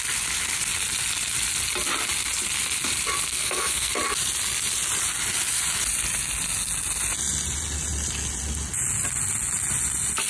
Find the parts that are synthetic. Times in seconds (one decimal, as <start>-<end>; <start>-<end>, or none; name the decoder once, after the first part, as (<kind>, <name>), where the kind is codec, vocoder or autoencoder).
3.3-3.9 (codec, SNAC)